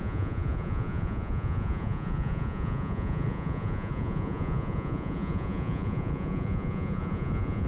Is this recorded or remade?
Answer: remade